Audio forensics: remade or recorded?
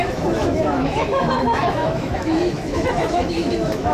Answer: remade